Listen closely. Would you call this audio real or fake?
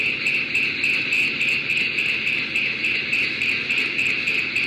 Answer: real